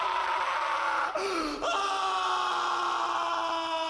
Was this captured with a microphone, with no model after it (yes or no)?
yes